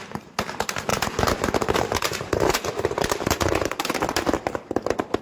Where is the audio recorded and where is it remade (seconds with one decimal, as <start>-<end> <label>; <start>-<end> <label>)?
0.0-0.9 recorded; 0.9-4.0 remade; 4.0-5.2 recorded